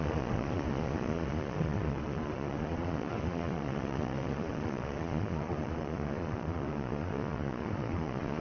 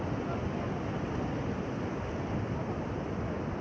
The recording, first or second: second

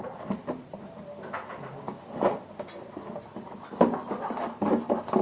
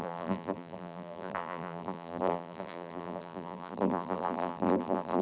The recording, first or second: first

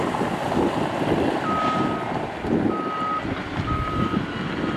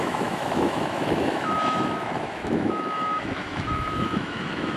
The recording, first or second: first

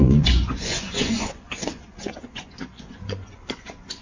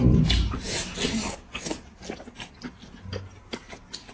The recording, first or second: second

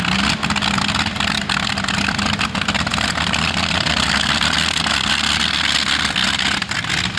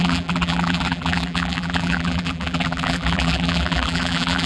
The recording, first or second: first